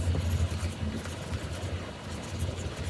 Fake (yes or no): no